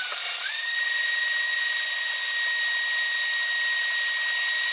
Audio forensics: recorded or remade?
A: recorded